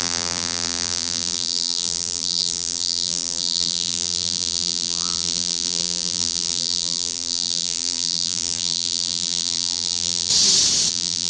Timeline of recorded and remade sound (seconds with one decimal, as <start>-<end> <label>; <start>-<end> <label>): 0.0-10.3 remade; 10.3-10.9 recorded; 10.9-11.3 remade